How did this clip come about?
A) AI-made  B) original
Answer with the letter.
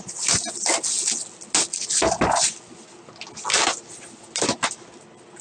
B